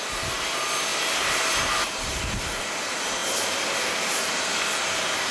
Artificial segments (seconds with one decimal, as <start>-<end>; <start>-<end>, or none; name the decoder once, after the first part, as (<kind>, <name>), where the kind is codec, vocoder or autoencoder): none